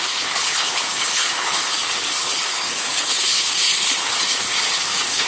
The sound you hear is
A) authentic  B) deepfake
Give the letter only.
B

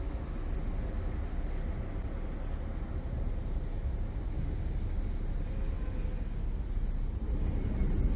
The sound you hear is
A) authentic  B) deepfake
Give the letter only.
A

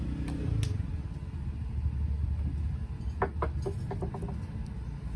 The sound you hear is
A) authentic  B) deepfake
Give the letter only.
A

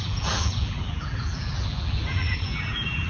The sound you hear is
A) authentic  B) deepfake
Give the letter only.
B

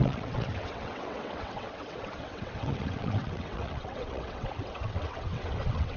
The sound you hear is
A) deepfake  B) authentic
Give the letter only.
A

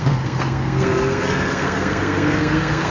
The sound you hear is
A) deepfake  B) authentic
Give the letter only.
A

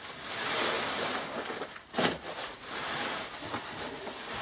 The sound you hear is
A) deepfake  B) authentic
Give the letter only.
B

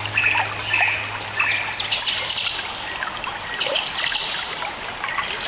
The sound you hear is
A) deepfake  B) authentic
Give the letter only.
B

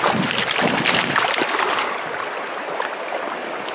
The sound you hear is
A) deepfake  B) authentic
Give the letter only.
B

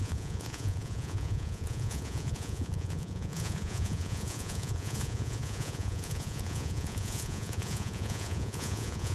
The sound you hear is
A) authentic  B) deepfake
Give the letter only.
B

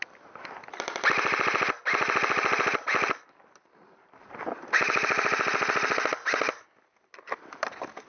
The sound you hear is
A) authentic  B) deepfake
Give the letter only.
A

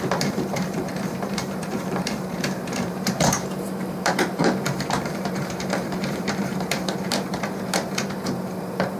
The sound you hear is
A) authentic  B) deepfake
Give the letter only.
B